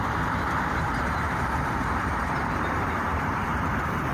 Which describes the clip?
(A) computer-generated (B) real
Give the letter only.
A